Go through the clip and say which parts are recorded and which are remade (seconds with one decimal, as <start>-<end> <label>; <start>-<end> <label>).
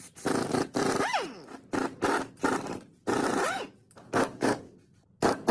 0.0-3.8 recorded; 3.8-4.7 remade; 4.7-5.5 recorded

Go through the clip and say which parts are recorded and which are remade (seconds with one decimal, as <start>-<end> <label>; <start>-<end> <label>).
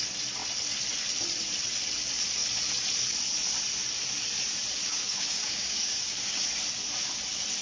0.0-4.8 recorded; 4.8-6.4 remade; 6.4-7.6 recorded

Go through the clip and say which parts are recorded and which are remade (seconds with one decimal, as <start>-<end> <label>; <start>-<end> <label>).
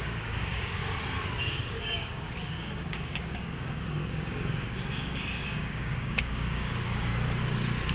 0.0-0.8 remade; 0.8-1.4 recorded; 1.4-7.1 remade; 7.1-7.9 recorded